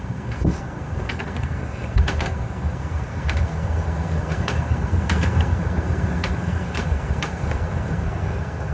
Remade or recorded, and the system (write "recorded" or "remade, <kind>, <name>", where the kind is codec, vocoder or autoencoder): remade, codec, SNAC